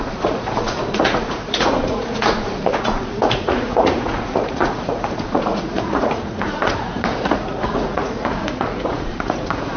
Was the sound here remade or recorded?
remade